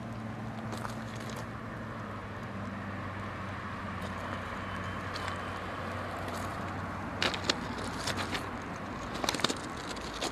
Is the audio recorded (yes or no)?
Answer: yes